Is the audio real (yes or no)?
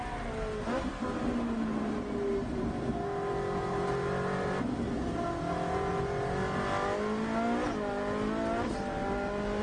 yes